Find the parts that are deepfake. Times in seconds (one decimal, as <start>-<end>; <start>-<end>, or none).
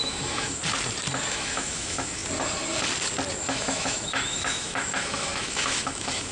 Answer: 0.0-0.6; 1.3-2.2; 3.4-6.3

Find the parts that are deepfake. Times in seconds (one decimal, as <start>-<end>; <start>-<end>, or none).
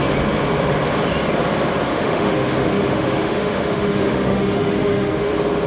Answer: 1.9-5.3